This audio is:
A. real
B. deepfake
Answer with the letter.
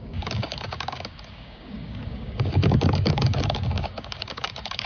B